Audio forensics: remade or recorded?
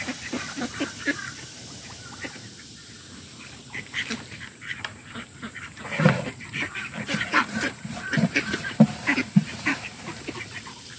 remade